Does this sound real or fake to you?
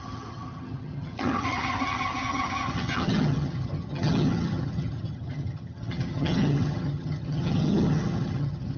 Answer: fake